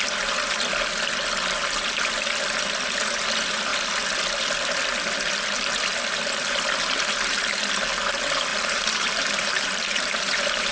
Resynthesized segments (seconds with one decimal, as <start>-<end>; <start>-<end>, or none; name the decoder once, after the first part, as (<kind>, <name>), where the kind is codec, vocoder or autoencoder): 8.5-10.7 (vocoder, BigVGAN v2)